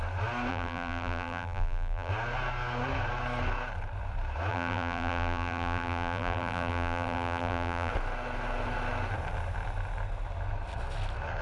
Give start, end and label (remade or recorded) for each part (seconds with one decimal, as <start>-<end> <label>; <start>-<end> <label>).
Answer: 0.0-0.5 recorded; 0.5-2.1 remade; 2.1-4.5 recorded; 4.5-7.9 remade; 7.9-11.4 recorded